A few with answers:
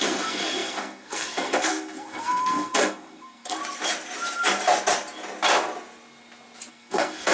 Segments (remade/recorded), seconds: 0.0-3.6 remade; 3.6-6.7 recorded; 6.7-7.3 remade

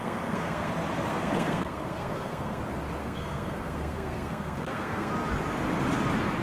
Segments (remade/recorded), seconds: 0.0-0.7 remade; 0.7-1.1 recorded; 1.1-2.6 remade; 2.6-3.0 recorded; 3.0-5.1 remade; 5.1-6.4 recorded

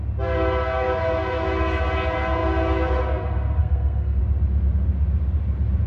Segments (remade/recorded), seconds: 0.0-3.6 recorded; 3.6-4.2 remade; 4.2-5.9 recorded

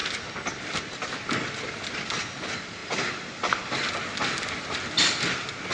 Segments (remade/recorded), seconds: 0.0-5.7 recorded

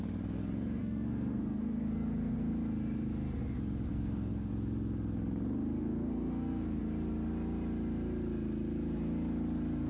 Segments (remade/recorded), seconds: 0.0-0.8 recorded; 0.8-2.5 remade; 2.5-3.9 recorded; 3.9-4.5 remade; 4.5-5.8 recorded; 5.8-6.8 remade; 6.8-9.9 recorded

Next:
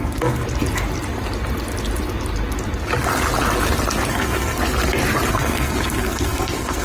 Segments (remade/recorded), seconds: 0.0-0.4 remade; 0.4-4.1 recorded; 4.1-4.6 remade; 4.6-5.3 recorded; 5.3-6.8 remade